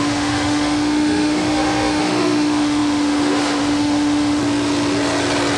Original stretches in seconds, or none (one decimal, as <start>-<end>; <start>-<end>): 4.4-5.6